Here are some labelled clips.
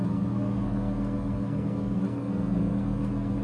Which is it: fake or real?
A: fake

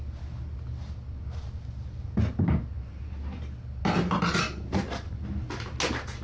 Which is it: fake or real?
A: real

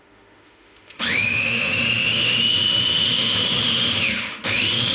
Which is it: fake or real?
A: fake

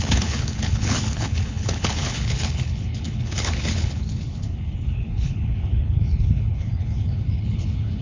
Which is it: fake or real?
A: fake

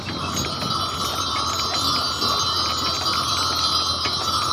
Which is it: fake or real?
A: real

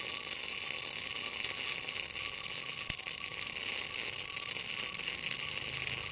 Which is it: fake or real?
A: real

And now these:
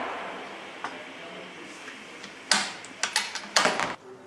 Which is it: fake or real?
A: real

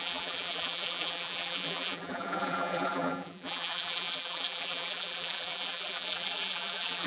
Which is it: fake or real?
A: fake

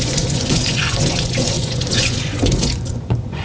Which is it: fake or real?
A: fake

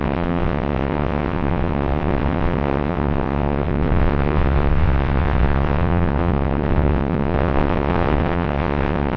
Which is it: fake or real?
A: fake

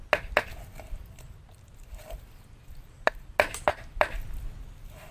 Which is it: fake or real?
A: real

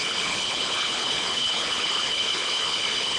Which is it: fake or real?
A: fake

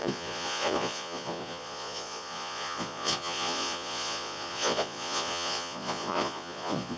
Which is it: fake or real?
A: fake